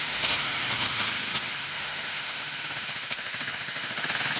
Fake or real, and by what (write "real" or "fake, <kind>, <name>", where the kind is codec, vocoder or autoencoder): fake, autoencoder, DAC-VAE